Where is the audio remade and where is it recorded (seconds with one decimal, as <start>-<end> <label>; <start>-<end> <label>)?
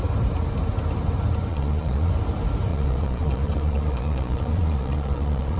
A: 0.0-1.5 recorded; 1.5-2.1 remade; 2.1-2.7 recorded; 2.7-5.6 remade